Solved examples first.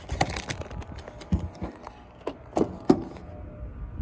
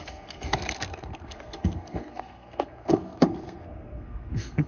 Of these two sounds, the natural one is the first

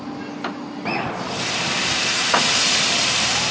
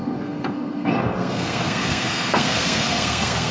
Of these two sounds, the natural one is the first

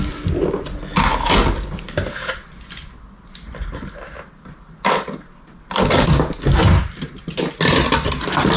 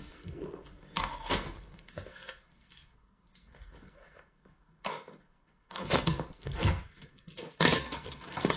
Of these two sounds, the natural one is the first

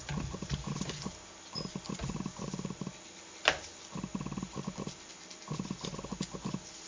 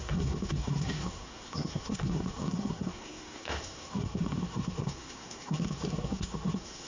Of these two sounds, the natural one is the first